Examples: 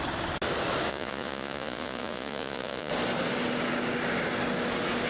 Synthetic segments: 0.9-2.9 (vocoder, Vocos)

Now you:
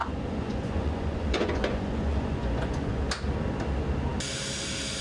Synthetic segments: 0.0-3.0 (vocoder, Vocos)

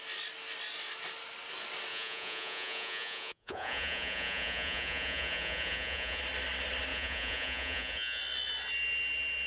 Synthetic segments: 1.9-6.2 (vocoder, Vocos); 6.9-8.2

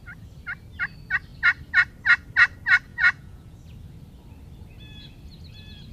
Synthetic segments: 2.9-3.6 (vocoder, Vocos)

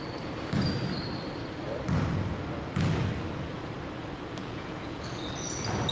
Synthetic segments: 4.4-5.0 (vocoder, Vocos)

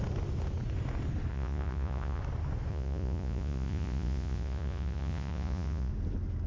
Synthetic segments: 1.3-2.2 (vocoder, Vocos); 2.7-5.9